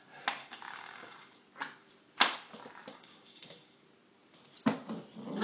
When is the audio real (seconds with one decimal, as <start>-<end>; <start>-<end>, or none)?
0.0-0.4; 1.4-2.9; 3.8-5.4